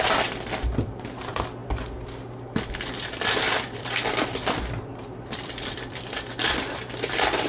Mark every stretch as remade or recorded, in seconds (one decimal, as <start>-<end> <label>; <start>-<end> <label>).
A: 0.0-1.6 remade; 1.6-2.2 recorded; 2.2-7.5 remade